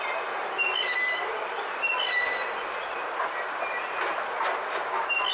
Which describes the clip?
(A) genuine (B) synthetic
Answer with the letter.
A